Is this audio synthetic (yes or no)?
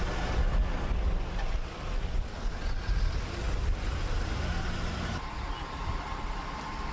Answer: no